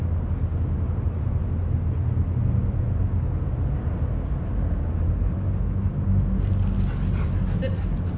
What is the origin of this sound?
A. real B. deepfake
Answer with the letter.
A